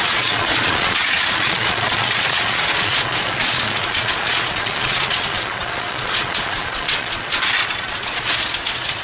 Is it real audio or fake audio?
fake